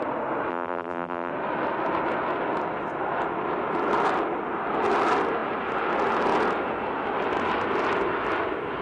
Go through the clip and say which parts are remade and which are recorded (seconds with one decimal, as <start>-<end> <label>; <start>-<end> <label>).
0.0-0.5 recorded; 0.5-1.3 remade; 1.3-8.8 recorded